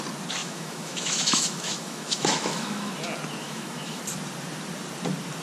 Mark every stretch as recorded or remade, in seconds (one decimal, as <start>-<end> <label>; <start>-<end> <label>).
0.0-0.4 recorded; 0.4-2.9 remade; 2.9-3.4 recorded; 3.4-4.0 remade; 4.0-5.4 recorded